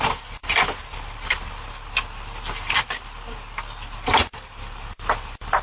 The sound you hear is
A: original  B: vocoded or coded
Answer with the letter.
A